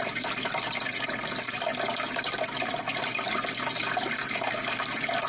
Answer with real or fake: real